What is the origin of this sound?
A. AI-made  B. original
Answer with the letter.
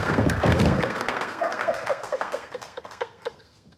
A